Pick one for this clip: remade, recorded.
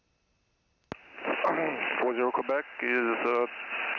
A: recorded